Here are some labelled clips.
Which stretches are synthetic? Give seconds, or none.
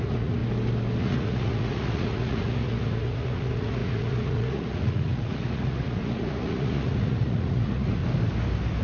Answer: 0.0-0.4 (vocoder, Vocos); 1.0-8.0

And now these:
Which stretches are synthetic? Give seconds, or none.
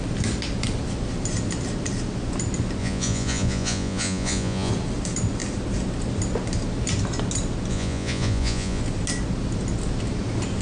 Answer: 2.8-4.7 (vocoder, Vocos); 7.7-8.8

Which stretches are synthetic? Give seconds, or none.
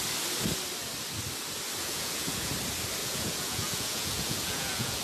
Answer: 1.8-2.5 (vocoder, Vocos); 3.0-5.0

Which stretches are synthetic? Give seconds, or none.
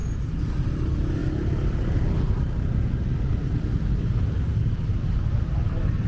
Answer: none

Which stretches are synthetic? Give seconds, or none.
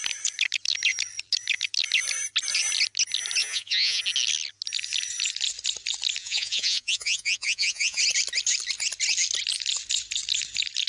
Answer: 3.4-4.0 (vocoder, Vocos); 6.2-8.0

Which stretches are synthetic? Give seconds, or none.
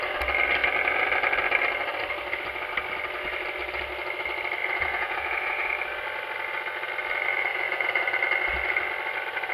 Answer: 4.6-5.7 (vocoder, Vocos); 7.5-8.0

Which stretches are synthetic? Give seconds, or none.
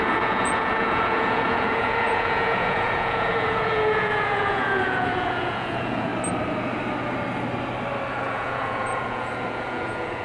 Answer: 0.0-6.1 (vocoder, Vocos); 8.1-10.2